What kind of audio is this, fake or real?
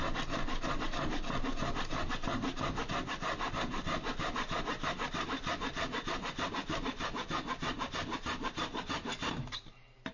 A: real